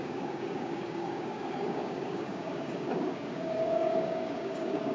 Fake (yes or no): yes